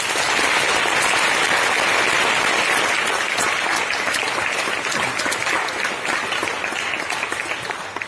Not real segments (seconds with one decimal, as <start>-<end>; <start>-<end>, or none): none